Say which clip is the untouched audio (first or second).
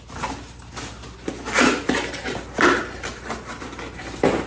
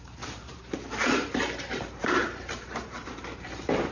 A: first